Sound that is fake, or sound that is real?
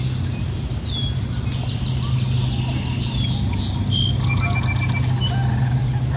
real